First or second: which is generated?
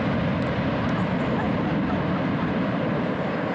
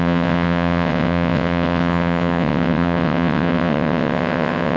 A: second